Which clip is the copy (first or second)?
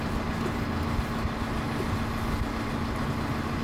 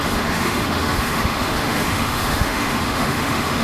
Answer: second